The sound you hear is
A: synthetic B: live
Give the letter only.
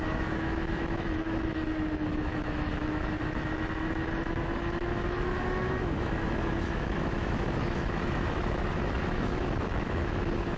A